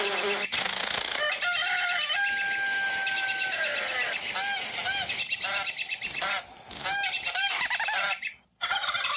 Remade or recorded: recorded